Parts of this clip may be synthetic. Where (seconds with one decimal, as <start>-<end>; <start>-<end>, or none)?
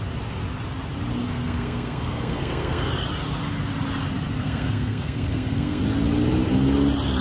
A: 1.2-2.9; 4.4-5.8